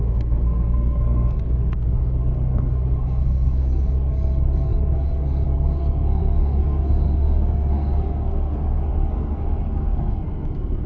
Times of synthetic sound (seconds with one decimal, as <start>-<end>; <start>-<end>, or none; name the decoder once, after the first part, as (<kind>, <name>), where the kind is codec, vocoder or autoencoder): 0.0-10.9 (codec, SNAC)